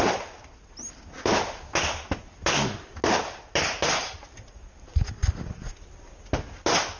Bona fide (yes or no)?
yes